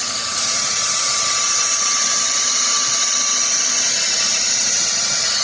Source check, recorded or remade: recorded